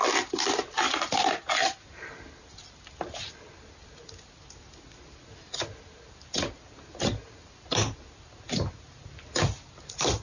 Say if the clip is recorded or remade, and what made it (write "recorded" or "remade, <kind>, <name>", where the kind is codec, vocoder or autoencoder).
recorded